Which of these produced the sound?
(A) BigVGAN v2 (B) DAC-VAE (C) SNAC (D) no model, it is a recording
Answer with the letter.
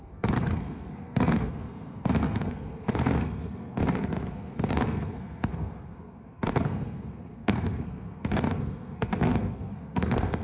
C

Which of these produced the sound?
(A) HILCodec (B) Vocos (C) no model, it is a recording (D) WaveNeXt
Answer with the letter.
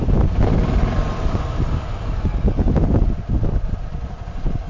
C